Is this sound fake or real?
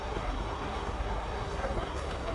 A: fake